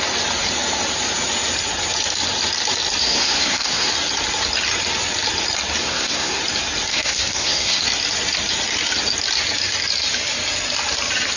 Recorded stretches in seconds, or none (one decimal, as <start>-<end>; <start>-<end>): 0.0-3.0; 3.9-5.8; 6.4-6.9; 7.8-11.4